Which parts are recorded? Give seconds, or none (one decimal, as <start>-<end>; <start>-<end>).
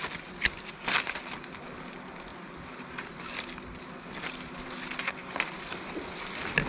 0.0-6.7